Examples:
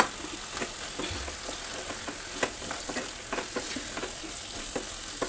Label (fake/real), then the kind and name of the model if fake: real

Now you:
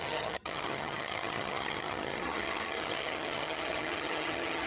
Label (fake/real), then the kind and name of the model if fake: fake, vocoder, HiFi-GAN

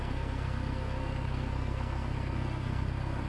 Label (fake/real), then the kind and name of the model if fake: fake, codec, SNAC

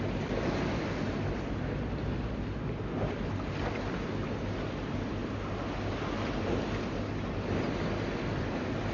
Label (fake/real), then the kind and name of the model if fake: real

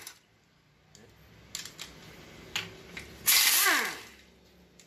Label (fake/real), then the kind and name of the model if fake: real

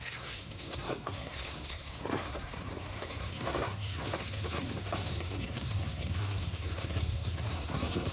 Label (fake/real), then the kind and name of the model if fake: fake, codec, SNAC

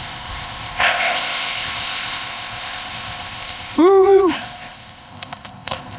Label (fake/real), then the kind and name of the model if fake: fake, codec, ZipCodec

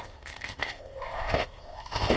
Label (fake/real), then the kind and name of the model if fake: fake, codec, ZipCodec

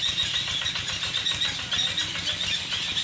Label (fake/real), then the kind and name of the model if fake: real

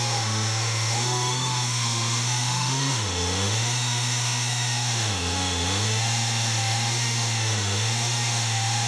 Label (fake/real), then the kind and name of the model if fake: fake, autoencoder, DAC-VAE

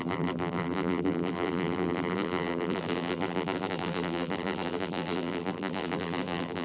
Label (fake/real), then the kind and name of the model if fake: fake, vocoder, BigVGAN v2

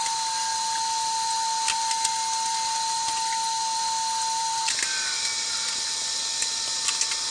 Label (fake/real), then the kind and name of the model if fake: real